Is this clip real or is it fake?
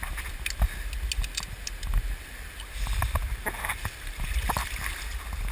real